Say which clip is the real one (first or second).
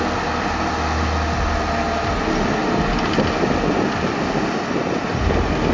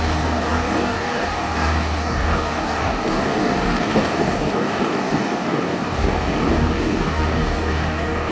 first